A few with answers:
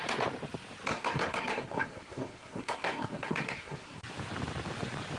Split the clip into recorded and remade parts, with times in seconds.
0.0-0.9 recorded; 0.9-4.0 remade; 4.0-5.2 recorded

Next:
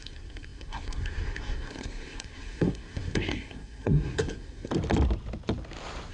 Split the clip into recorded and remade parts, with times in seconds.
0.0-4.7 remade; 4.7-6.1 recorded

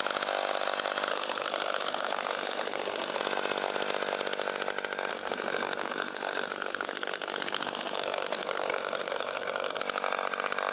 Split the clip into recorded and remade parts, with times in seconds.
0.0-1.1 recorded; 1.1-3.2 remade; 3.2-5.1 recorded; 5.1-9.8 remade; 9.8-10.7 recorded

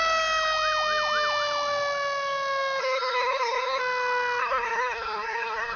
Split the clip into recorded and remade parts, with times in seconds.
0.0-2.8 recorded; 2.8-3.8 remade; 3.8-4.4 recorded; 4.4-5.8 remade

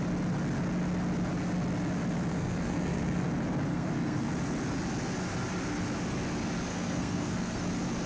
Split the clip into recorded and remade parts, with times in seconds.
0.0-2.3 recorded; 2.3-3.3 remade; 3.3-3.7 recorded; 3.7-4.3 remade; 4.3-6.7 recorded; 6.7-7.6 remade; 7.6-8.1 recorded

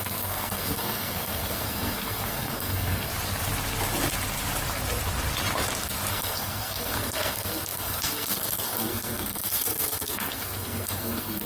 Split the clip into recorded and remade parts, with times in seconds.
0.0-3.1 remade; 3.1-6.1 recorded; 6.1-11.5 remade

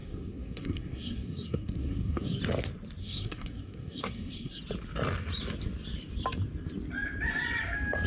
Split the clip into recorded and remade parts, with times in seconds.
0.0-2.4 remade; 2.4-3.0 recorded; 3.0-4.6 remade; 4.6-8.1 recorded